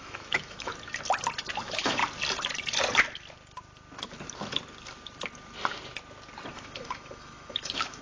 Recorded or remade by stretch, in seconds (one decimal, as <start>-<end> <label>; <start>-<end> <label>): 0.0-0.7 remade; 0.7-1.6 recorded; 1.6-2.0 remade; 2.0-6.5 recorded; 6.5-8.0 remade